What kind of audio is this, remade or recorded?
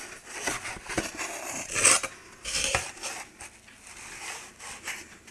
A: recorded